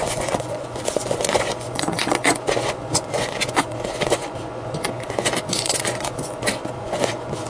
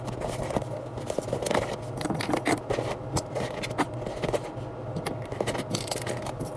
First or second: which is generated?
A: first